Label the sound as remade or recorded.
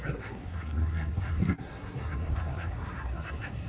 remade